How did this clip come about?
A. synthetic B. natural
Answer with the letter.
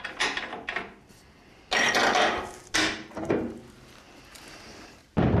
B